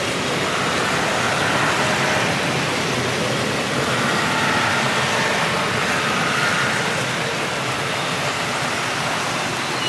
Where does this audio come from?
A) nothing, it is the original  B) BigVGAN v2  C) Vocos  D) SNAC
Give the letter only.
A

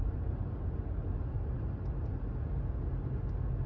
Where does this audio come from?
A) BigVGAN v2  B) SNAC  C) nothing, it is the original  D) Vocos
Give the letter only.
C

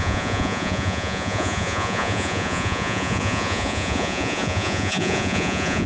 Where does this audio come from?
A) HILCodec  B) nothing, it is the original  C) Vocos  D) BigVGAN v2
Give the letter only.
C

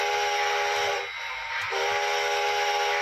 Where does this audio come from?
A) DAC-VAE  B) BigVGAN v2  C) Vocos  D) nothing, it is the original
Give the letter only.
D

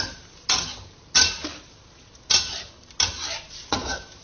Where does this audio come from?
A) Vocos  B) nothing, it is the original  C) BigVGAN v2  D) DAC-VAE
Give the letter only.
B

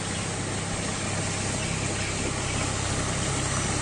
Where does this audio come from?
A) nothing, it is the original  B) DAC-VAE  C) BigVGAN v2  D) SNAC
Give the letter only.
A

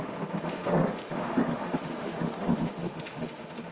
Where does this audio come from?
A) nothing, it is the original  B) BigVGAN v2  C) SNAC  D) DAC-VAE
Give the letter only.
D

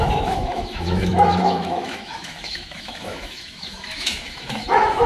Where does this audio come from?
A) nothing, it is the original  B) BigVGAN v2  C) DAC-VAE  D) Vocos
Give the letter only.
C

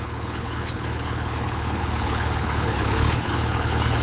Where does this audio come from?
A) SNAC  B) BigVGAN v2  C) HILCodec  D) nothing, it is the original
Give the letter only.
C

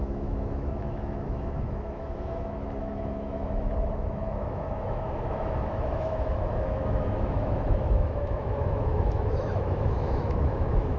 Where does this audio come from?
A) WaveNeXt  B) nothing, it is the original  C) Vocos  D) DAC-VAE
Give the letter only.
D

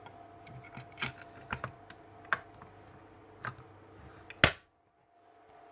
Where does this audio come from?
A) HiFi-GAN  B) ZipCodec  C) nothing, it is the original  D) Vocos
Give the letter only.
C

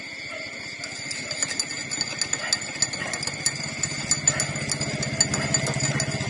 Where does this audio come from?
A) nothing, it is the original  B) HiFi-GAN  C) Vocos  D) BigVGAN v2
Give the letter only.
A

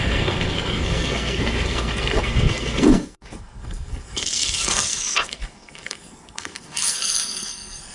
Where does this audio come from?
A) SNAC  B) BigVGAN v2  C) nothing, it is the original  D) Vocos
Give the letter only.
A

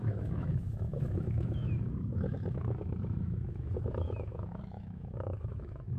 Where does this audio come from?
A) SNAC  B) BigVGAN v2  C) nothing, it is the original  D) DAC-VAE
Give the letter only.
D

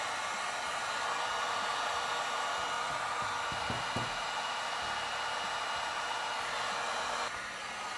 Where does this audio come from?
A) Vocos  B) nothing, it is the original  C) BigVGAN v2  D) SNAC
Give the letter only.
B